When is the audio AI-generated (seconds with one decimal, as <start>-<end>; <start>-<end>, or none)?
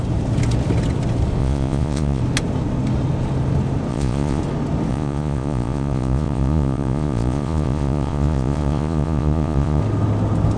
1.4-2.2; 3.9-4.4; 4.9-9.8